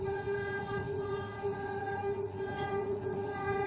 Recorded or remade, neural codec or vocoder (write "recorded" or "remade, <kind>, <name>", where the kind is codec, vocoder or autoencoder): remade, vocoder, Vocos